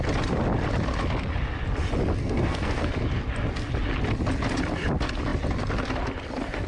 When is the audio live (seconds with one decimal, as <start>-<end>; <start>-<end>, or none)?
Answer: 0.0-2.2; 2.9-6.7